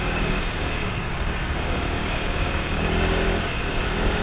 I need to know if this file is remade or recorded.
remade